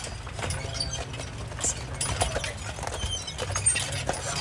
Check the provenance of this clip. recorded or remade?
recorded